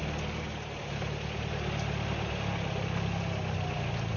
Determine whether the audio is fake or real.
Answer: real